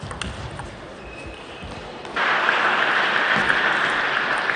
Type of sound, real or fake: real